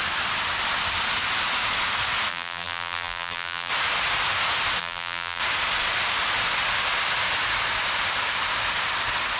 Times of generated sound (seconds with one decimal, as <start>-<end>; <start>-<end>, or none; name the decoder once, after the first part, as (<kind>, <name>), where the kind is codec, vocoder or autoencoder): 2.3-3.7 (vocoder, BigVGAN v2); 4.8-5.4